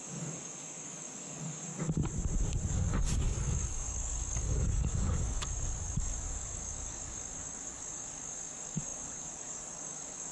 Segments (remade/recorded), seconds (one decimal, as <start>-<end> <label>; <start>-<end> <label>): 0.0-1.7 remade; 1.7-2.7 recorded; 2.7-10.3 remade